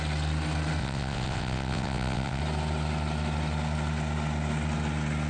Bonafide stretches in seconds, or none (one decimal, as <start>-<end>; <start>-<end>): 0.0-0.8; 2.4-5.3

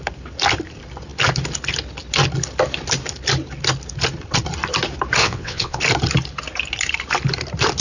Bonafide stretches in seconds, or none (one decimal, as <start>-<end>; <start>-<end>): 0.0-5.2; 5.8-7.8

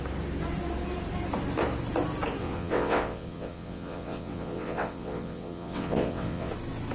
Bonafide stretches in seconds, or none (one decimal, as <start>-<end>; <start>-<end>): 0.0-2.4; 6.5-6.9

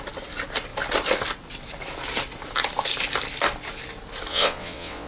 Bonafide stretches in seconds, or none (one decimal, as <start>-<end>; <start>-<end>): 0.0-4.3

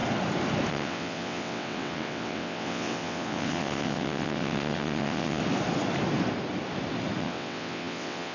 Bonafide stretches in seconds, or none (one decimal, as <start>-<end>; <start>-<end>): 0.0-0.7; 5.4-7.2